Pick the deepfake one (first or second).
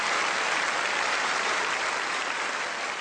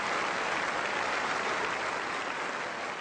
first